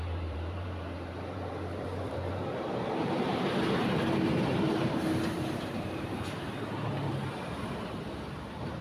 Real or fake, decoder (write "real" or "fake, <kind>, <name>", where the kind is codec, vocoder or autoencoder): fake, vocoder, BigVGAN v2